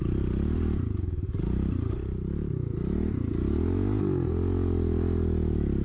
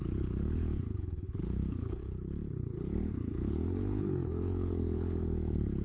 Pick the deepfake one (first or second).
second